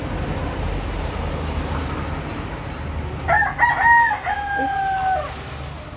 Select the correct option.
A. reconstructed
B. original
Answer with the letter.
B